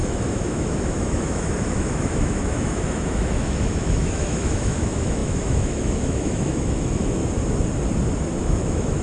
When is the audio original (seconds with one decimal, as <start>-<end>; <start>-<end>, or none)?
7.2-8.4